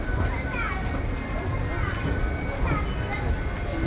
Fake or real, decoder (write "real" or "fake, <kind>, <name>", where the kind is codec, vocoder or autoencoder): real